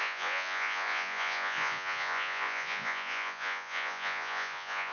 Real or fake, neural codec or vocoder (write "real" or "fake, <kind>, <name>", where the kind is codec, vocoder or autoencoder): fake, vocoder, Vocos